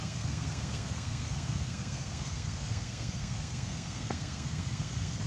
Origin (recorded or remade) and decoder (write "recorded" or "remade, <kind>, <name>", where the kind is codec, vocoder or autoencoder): remade, codec, SNAC